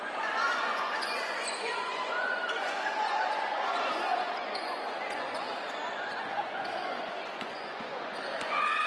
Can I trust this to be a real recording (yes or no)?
no